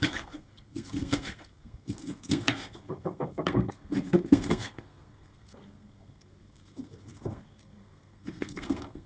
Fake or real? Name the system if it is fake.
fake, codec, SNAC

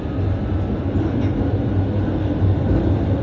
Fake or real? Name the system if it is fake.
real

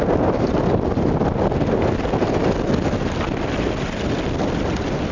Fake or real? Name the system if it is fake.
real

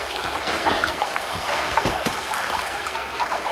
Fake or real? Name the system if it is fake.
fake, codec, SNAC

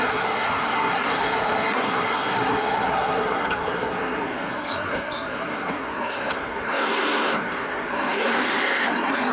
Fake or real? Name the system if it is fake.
fake, codec, SNAC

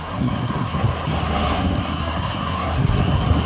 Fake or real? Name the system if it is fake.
fake, codec, SNAC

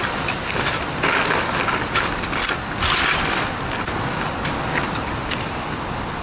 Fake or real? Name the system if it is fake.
real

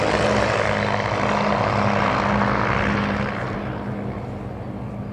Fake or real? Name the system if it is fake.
real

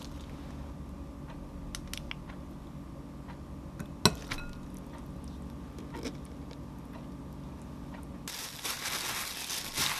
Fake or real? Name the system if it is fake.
real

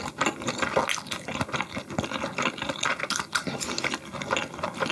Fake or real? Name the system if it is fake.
real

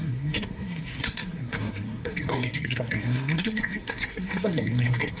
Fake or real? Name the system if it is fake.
fake, codec, SNAC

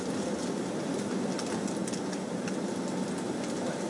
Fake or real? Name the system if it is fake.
real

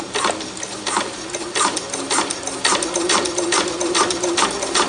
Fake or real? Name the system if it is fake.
real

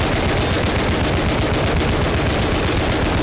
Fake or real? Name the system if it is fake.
real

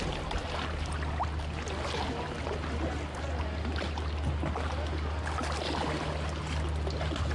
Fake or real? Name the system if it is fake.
real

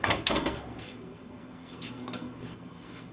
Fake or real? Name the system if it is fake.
fake, codec, SNAC